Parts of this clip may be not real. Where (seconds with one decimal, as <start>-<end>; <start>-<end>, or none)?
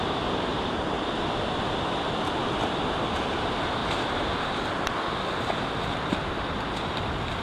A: 0.5-1.1; 3.8-4.6